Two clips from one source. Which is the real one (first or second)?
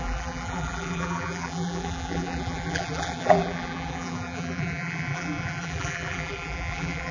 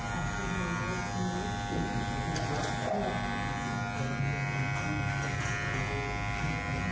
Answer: second